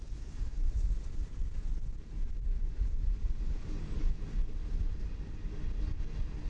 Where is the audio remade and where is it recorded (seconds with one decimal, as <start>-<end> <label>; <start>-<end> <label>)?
0.0-0.6 remade; 0.6-3.4 recorded; 3.4-4.2 remade; 4.2-6.5 recorded